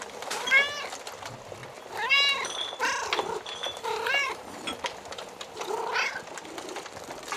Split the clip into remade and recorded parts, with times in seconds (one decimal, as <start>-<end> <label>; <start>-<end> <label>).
0.0-3.6 recorded; 3.6-4.6 remade; 4.6-7.4 recorded